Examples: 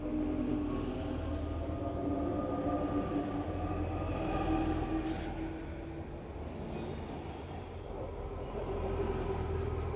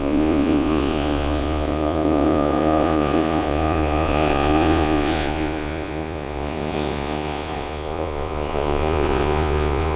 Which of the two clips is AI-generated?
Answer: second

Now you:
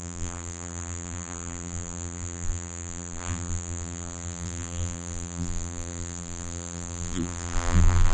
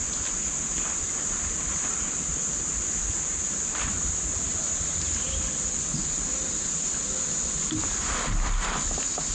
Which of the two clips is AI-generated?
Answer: first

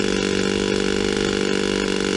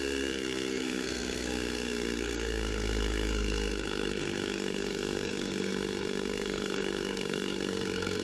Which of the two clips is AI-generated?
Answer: second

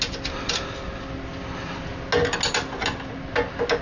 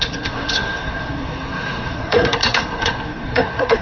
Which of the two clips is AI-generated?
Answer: second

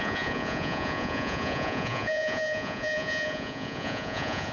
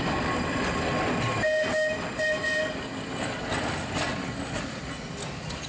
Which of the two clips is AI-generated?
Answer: first